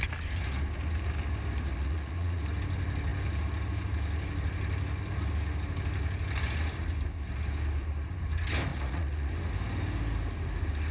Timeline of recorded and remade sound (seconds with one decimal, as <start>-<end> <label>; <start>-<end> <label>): 0.0-1.7 recorded; 1.7-2.4 remade; 2.4-8.7 recorded; 8.7-9.3 remade; 9.3-10.9 recorded